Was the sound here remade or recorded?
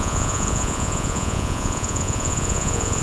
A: remade